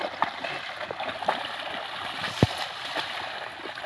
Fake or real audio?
real